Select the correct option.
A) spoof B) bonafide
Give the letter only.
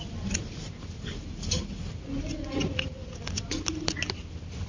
B